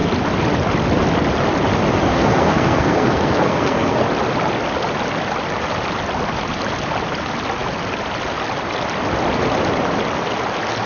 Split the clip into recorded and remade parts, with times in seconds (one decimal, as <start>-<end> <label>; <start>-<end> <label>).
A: 0.0-2.1 recorded; 2.1-4.0 remade; 4.0-10.9 recorded